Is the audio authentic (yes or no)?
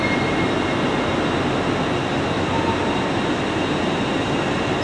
yes